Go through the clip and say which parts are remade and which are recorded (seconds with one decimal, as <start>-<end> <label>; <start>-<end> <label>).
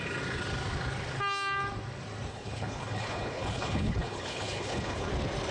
0.0-2.3 recorded; 2.3-5.1 remade; 5.1-5.5 recorded